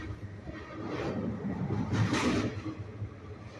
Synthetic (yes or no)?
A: no